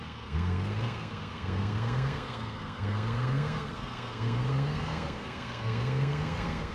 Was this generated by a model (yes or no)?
yes